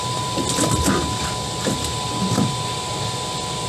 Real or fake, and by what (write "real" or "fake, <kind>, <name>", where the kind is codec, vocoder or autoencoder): real